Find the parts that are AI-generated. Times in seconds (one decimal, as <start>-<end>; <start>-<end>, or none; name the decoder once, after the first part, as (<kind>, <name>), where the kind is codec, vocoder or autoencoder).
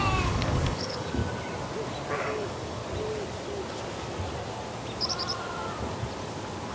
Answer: 0.0-1.2 (codec, DAC); 2.2-2.8